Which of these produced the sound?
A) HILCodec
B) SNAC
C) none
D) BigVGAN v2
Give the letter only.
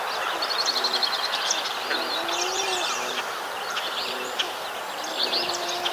C